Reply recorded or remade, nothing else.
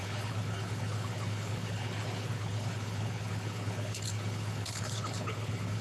remade